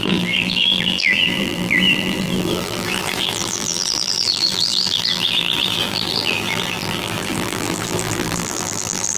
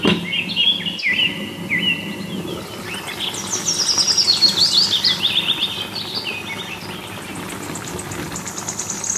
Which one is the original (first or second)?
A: second